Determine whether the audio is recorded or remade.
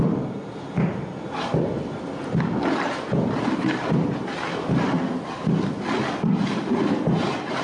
recorded